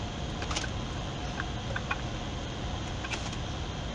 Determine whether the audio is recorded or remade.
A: recorded